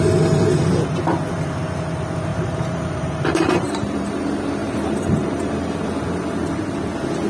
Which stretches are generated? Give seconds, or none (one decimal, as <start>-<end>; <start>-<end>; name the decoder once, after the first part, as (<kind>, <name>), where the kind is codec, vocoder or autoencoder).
2.3-4.1 (vocoder, BigVGAN v2); 4.6-5.5